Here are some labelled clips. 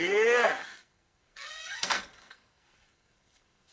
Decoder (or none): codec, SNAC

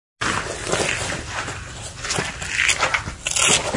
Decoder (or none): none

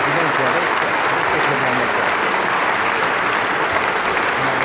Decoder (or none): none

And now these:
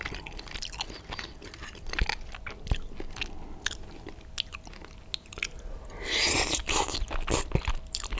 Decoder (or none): none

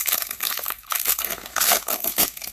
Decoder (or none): codec, SNAC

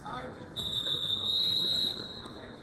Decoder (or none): codec, SNAC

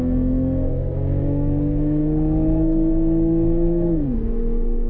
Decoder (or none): codec, SNAC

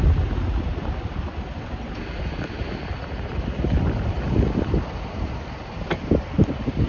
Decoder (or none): none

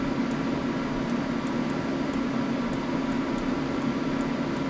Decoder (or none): none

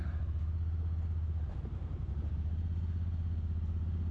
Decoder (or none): none